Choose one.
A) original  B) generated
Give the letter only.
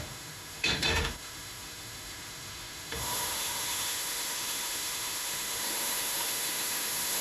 B